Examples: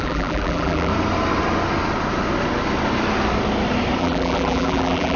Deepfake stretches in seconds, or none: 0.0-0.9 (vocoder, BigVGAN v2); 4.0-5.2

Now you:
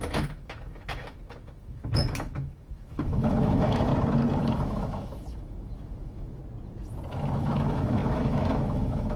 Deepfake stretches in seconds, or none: 0.0-3.9 (autoencoder, DAC-VAE); 4.4-6.4; 7.1-9.2

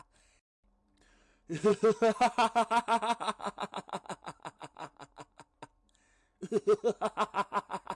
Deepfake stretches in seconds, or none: 1.7-5.1 (vocoder, Vocos); 7.3-8.0

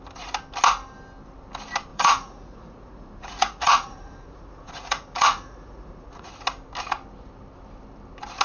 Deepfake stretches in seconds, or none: 1.9-6.3 (vocoder, Vocos)

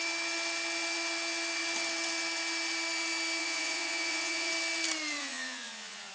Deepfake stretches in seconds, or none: 3.4-4.5 (vocoder, Vocos); 5.2-6.1

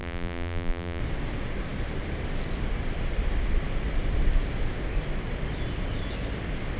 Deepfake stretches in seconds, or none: 0.0-1.0 (vocoder, BigVGAN v2)

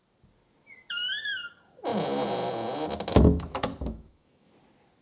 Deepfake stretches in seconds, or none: 3.1-4.5 (autoencoder, DAC-VAE)